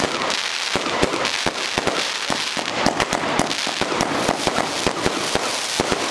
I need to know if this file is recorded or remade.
recorded